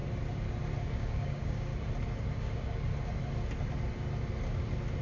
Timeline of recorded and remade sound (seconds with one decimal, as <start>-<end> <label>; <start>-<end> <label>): 0.0-0.8 recorded; 0.8-1.7 remade; 1.7-2.4 recorded; 2.4-2.9 remade; 2.9-5.0 recorded